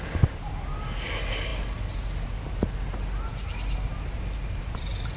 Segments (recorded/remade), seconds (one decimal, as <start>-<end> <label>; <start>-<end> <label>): 0.0-5.2 recorded